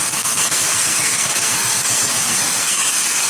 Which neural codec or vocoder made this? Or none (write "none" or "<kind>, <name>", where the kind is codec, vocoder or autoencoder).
codec, SNAC